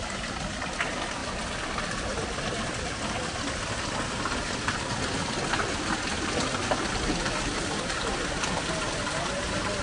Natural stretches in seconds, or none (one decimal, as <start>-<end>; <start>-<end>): 0.0-9.8